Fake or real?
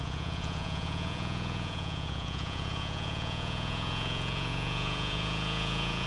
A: fake